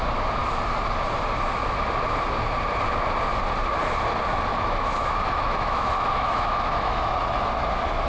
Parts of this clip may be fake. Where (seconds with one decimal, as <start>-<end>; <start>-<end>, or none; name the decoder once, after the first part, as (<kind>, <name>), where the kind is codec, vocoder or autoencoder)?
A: 4.5-7.1 (autoencoder, DAC-VAE)

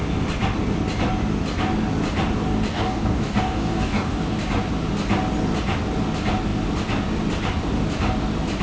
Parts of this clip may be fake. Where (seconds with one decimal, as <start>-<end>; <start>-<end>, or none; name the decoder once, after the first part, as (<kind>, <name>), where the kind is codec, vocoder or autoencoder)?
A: 2.7-4.2 (codec, DAC)

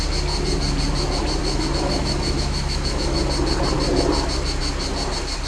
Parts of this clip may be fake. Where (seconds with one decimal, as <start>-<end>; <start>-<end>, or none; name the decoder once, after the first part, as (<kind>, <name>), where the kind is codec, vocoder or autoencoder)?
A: 1.4-3.2 (autoencoder, DAC-VAE)